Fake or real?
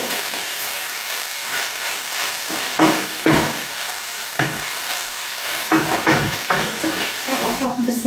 fake